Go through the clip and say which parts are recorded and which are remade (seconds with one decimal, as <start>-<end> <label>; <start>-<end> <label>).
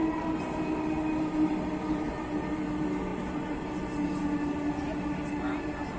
0.0-6.0 recorded